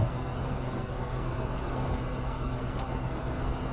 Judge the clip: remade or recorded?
remade